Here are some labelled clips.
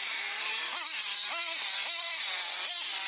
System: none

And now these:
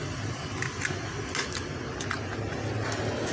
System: none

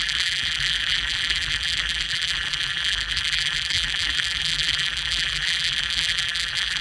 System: vocoder, BigVGAN v2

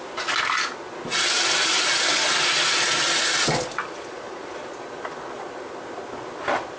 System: none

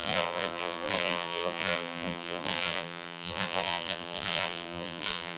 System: vocoder, BigVGAN v2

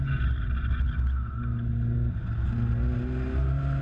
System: none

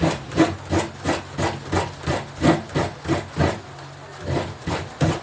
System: none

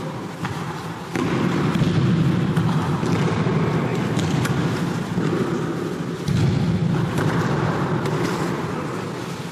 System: none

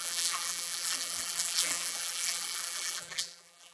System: vocoder, BigVGAN v2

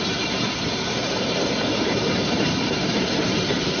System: vocoder, BigVGAN v2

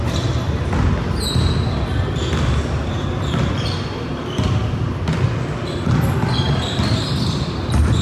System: none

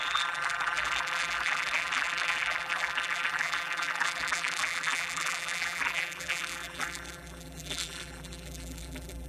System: vocoder, BigVGAN v2